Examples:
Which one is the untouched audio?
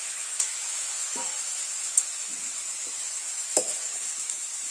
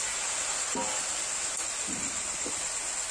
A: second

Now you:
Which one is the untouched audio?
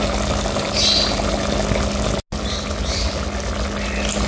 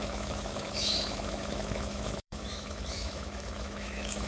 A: first